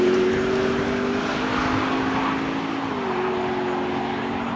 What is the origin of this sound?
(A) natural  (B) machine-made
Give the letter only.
A